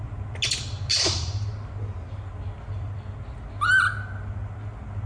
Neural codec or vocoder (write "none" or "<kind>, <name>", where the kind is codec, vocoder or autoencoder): none